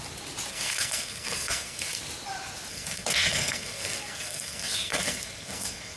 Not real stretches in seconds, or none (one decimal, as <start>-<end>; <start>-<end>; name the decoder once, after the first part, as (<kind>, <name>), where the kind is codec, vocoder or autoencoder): 0.5-2.0 (codec, SNAC); 2.7-6.0